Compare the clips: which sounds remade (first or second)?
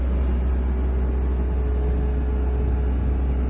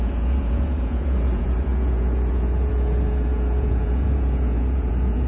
second